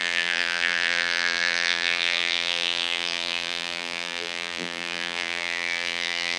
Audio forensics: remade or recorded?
remade